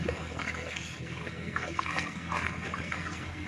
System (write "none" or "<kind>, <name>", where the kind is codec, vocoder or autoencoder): codec, SNAC